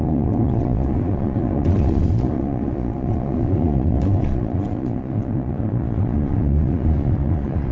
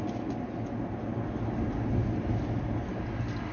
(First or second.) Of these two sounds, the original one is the second